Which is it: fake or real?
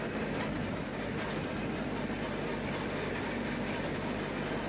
real